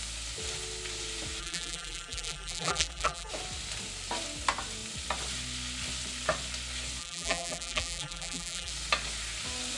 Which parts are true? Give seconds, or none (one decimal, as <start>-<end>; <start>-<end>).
0.0-1.4; 3.3-7.0; 8.7-9.8